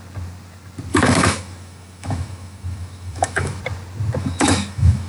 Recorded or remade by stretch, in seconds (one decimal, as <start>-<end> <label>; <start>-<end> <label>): 0.0-0.9 recorded; 0.9-3.6 remade; 3.6-4.2 recorded; 4.2-5.1 remade